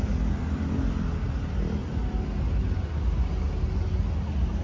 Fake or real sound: real